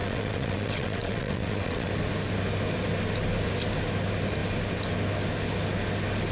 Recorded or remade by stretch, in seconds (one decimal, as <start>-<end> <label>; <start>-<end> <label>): 0.0-1.9 remade; 1.9-6.3 recorded